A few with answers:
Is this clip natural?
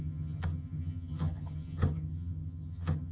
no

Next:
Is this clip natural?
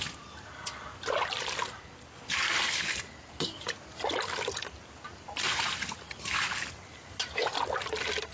yes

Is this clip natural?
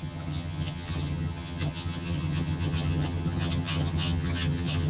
no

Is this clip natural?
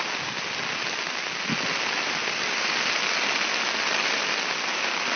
yes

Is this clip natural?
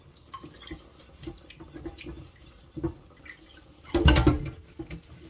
yes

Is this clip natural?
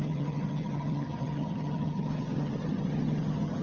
no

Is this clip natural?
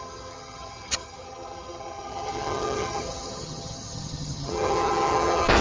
no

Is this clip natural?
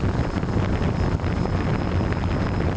yes